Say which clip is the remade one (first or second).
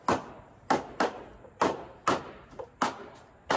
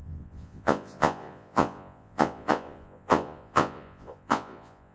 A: second